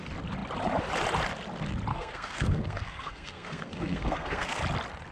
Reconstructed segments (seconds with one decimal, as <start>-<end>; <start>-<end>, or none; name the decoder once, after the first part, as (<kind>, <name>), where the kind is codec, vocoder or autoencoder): 1.9-4.6 (codec, SNAC)